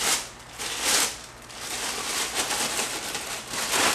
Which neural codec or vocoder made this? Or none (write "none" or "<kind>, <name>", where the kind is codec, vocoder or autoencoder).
none